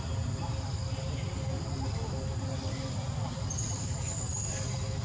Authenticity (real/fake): real